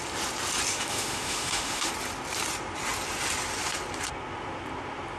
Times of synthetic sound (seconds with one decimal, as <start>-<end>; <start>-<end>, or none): 0.7-1.9